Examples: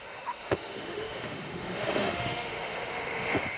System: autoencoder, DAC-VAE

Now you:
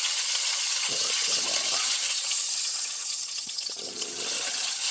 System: vocoder, HiFi-GAN